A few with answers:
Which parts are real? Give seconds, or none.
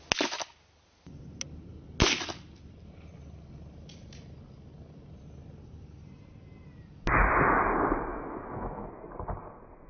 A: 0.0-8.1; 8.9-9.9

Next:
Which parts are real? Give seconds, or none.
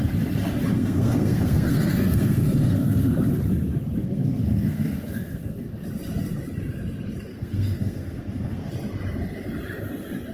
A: 0.0-0.7; 3.1-4.0; 5.7-7.3; 8.7-10.3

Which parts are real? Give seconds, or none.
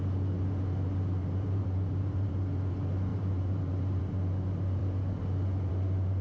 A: 0.0-1.2; 2.3-3.1; 4.0-6.2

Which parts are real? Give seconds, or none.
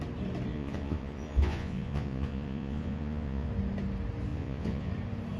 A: 0.0-0.5; 3.5-4.3; 4.9-5.4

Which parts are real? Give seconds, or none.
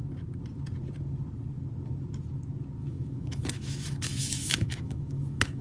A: 0.0-2.8